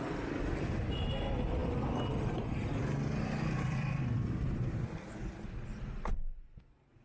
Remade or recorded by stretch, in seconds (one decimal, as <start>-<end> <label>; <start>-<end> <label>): 0.0-7.0 recorded